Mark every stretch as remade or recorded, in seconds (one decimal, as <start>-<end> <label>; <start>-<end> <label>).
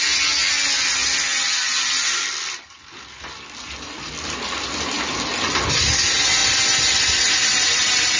0.0-8.2 recorded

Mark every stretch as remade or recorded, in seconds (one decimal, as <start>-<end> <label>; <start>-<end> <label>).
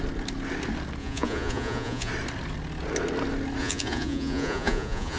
0.0-1.0 recorded; 1.0-2.1 remade; 2.1-3.6 recorded; 3.6-5.2 remade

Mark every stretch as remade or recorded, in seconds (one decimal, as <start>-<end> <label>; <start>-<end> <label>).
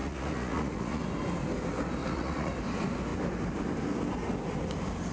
0.0-1.0 remade; 1.0-2.0 recorded; 2.0-2.5 remade; 2.5-5.1 recorded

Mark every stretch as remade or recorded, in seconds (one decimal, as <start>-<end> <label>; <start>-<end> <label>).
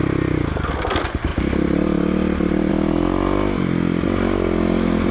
0.0-5.1 recorded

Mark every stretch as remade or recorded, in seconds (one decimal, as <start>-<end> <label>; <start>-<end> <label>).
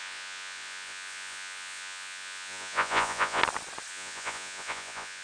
0.0-3.4 remade; 3.4-3.9 recorded; 3.9-5.2 remade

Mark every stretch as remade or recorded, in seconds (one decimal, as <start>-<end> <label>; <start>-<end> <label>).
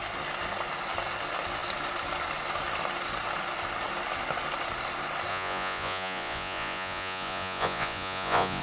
0.0-5.3 recorded; 5.3-8.6 remade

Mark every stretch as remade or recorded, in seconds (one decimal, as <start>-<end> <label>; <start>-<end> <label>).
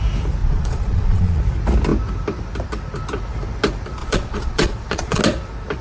0.0-0.4 recorded; 0.4-1.4 remade; 1.4-4.0 recorded; 4.0-5.2 remade; 5.2-5.8 recorded